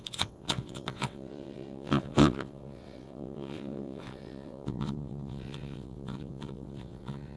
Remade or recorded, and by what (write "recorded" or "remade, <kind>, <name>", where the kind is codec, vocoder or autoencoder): remade, vocoder, WaveNeXt